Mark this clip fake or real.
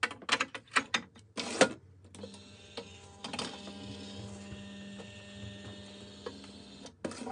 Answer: real